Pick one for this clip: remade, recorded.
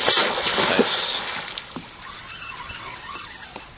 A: recorded